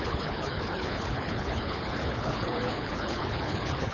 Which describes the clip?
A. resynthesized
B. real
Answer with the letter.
A